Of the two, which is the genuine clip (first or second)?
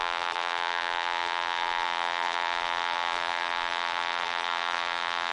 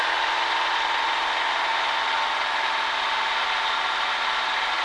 second